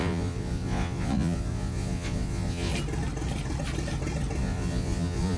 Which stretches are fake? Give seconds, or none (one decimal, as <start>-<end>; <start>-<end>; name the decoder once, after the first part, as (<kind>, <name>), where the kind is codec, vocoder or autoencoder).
0.0-2.7 (vocoder, Vocos); 4.4-5.4

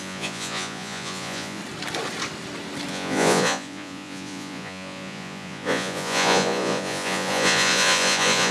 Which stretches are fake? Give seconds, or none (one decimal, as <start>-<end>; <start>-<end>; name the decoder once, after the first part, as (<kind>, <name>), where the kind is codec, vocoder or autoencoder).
0.0-1.6 (vocoder, Vocos); 2.9-8.5

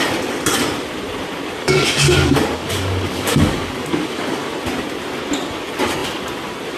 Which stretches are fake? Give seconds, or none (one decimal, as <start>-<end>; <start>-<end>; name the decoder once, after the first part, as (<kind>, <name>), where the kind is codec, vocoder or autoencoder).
1.6-4.5 (codec, DAC)

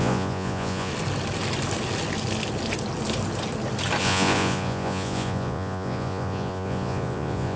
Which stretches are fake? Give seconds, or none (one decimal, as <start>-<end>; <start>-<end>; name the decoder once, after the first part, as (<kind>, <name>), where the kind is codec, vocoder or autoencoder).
0.0-0.9 (vocoder, Vocos); 4.0-7.6

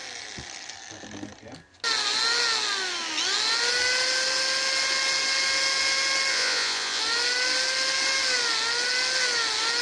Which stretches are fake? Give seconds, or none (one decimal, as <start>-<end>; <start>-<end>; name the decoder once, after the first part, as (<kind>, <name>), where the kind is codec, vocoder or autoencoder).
6.3-7.0 (vocoder, Vocos)

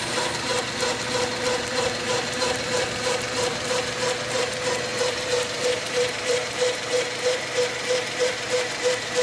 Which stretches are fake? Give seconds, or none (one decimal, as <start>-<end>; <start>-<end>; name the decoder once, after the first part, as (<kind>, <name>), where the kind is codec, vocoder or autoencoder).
0.0-0.5 (vocoder, BigVGAN v2); 1.6-9.2

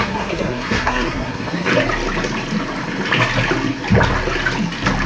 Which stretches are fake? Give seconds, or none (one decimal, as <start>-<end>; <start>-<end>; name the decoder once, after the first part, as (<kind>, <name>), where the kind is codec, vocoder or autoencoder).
0.0-1.7 (codec, SNAC)